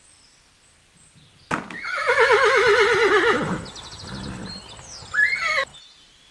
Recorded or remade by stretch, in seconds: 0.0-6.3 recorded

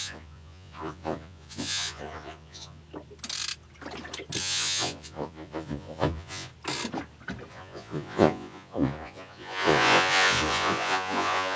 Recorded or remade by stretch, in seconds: 0.0-2.8 remade; 2.8-4.4 recorded; 4.4-6.5 remade; 6.5-7.5 recorded; 7.5-11.6 remade

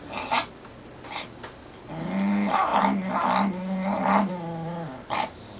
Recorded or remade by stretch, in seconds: 0.0-5.6 recorded

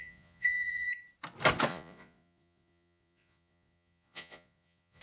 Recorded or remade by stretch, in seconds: 0.0-0.9 remade; 0.9-1.7 recorded; 1.7-5.0 remade

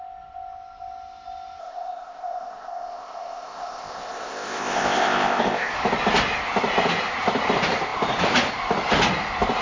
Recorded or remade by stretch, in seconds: 0.0-1.6 recorded; 1.6-5.7 remade; 5.7-9.6 recorded

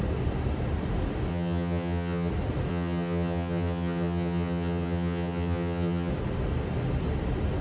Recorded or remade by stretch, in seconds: 0.0-1.3 recorded; 1.3-2.3 remade; 2.3-2.7 recorded; 2.7-6.1 remade; 6.1-7.6 recorded

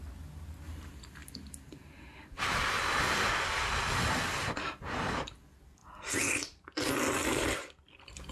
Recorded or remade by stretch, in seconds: 0.0-8.3 recorded

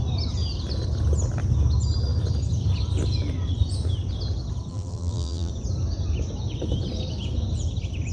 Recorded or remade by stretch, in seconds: 0.0-4.7 recorded; 4.7-5.5 remade; 5.5-8.1 recorded